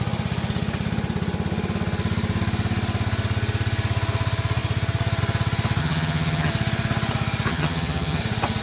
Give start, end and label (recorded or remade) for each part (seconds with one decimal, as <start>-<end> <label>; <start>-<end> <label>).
0.0-5.8 recorded; 5.8-6.5 remade; 6.5-7.5 recorded; 7.5-8.2 remade; 8.2-8.6 recorded